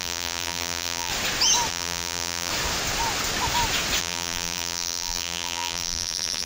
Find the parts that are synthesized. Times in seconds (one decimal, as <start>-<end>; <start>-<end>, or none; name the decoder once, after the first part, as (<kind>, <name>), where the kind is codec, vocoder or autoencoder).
0.0-1.1 (vocoder, BigVGAN v2); 1.7-2.5; 4.0-6.5